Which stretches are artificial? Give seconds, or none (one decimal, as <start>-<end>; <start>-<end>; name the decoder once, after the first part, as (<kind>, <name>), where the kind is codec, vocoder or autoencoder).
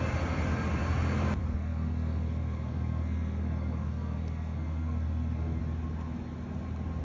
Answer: 1.4-5.6 (codec, SNAC)